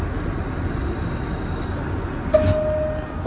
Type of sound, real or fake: real